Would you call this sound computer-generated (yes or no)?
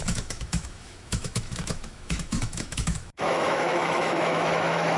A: yes